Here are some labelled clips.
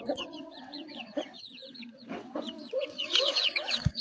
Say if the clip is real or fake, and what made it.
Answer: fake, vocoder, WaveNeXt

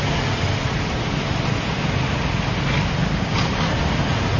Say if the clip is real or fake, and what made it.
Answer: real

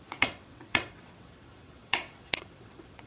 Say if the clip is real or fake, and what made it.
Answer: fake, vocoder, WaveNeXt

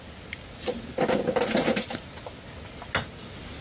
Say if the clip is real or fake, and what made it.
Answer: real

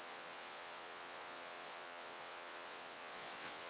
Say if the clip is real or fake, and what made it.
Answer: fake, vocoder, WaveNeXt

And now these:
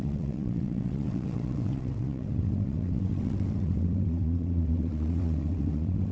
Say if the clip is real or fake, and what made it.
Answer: fake, vocoder, WaveNeXt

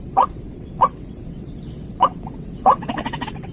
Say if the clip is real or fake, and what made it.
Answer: fake, vocoder, WaveNeXt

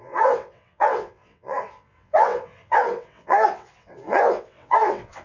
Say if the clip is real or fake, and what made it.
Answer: fake, vocoder, WaveNeXt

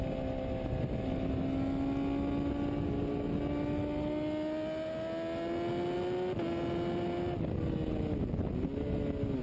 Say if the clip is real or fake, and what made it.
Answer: real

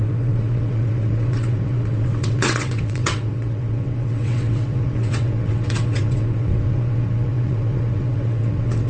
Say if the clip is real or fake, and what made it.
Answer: fake, vocoder, WaveNeXt